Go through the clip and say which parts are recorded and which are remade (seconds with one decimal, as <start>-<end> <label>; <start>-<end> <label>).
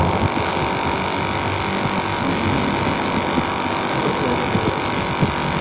0.0-5.6 recorded